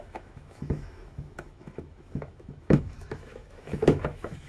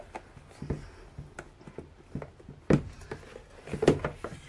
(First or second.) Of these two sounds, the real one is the second